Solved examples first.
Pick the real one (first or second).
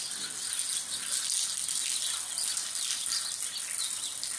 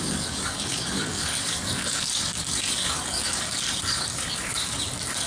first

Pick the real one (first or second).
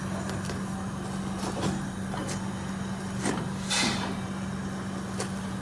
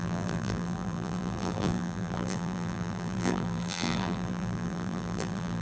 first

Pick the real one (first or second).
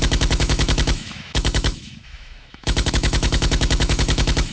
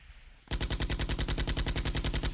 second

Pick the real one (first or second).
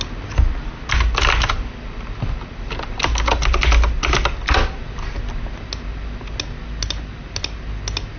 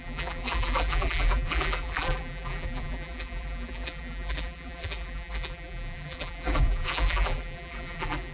first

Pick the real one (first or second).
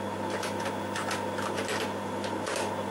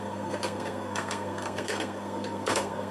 first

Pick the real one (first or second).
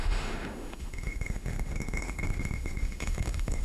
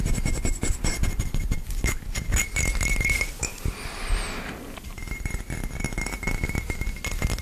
second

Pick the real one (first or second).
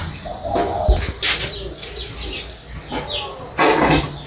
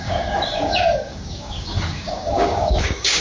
first